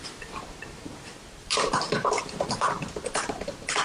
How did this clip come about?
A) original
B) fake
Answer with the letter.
B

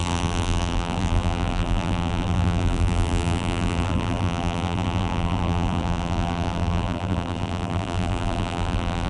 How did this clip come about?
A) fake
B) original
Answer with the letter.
A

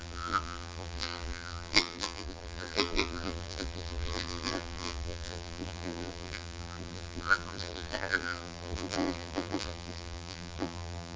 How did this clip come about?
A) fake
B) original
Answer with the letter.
A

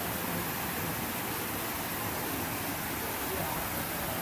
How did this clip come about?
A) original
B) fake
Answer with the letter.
B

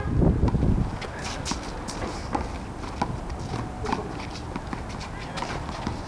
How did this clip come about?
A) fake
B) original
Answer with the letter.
B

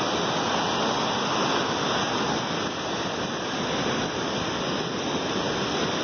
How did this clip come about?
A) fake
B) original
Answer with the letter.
B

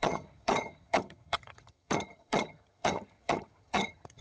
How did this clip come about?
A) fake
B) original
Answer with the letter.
A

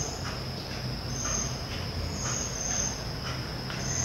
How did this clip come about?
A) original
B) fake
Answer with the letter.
A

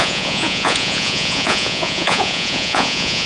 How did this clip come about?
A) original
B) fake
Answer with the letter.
B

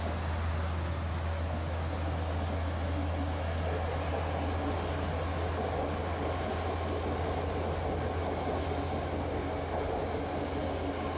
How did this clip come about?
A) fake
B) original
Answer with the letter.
B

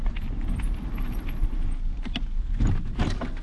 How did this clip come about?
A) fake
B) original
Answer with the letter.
B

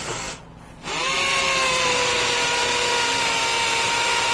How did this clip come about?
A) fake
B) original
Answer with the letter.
B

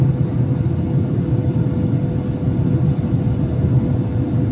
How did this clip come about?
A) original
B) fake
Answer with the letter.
A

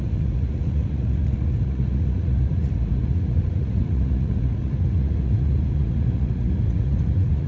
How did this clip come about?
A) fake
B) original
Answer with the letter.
A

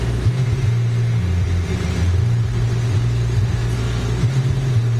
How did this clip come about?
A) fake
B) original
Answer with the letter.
B